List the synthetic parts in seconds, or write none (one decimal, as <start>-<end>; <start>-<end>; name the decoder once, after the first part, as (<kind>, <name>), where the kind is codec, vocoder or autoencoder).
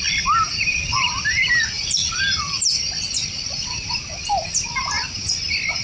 0.7-4.2 (vocoder, BigVGAN v2)